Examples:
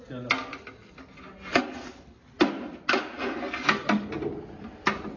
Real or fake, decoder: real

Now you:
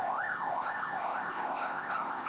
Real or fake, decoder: fake, codec, ZipCodec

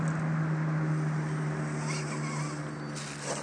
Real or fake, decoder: real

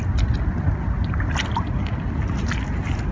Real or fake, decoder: real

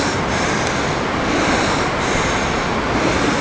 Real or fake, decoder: real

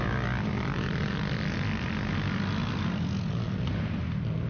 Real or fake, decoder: real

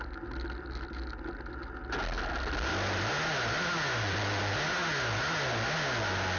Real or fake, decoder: real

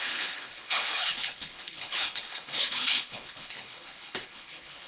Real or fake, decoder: fake, codec, HILCodec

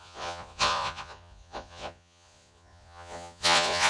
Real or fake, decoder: fake, vocoder, Vocos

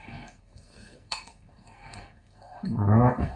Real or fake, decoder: fake, codec, SNAC